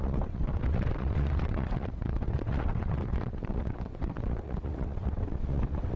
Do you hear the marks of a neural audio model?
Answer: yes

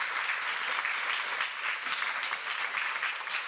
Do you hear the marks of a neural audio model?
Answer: no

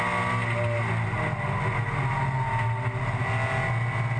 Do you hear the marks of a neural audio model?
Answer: no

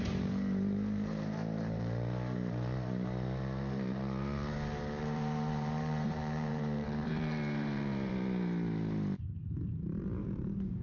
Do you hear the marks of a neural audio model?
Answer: yes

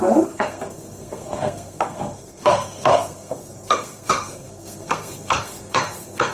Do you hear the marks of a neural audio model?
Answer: yes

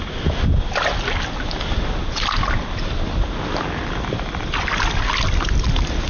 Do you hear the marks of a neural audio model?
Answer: no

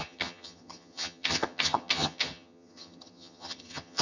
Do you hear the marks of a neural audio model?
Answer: yes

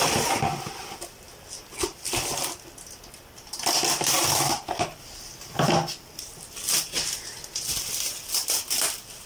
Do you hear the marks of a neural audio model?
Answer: no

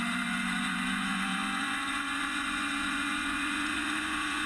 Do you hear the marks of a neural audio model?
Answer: yes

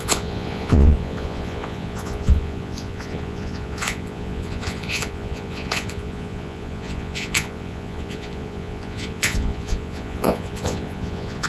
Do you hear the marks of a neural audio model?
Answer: yes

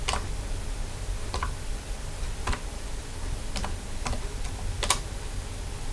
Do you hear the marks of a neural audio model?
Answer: yes